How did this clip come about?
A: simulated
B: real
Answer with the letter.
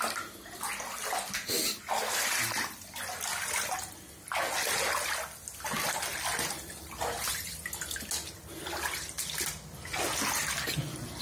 B